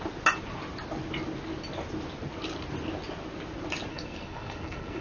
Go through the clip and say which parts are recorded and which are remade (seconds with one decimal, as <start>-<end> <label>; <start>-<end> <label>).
0.0-3.9 recorded; 3.9-5.0 remade